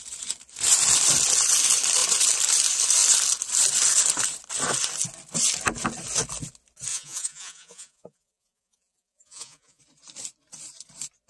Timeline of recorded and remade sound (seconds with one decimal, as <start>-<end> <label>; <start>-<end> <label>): 0.0-6.9 recorded; 6.9-9.8 remade; 9.8-11.3 recorded